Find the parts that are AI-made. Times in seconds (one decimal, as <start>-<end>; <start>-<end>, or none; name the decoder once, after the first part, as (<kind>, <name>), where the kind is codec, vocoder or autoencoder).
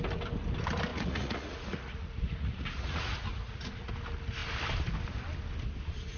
0.9-3.9 (vocoder, Vocos)